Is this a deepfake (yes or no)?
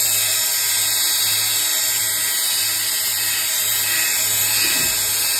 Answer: no